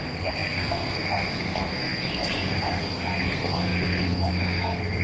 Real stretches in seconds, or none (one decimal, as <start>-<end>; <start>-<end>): none